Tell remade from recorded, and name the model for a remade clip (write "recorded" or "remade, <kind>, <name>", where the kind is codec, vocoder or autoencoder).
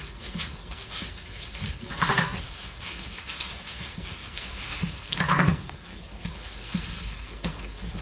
remade, codec, SNAC